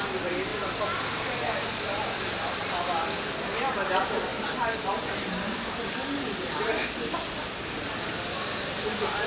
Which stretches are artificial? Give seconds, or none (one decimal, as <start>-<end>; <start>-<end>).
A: 0.0-0.5; 1.8-4.3; 5.0-9.3